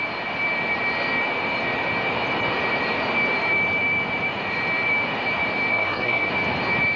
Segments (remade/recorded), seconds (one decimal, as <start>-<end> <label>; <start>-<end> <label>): 0.0-5.7 recorded; 5.7-6.3 remade; 6.3-7.0 recorded